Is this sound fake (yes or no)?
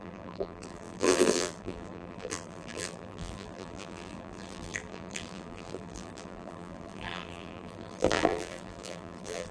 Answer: yes